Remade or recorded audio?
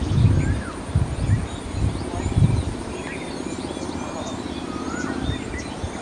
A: recorded